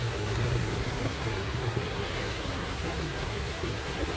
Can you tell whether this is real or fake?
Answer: fake